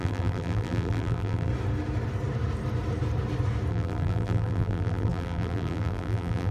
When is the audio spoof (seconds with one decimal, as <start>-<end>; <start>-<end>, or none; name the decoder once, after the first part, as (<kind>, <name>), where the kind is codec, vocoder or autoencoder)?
0.0-1.5 (vocoder, BigVGAN v2); 3.7-6.5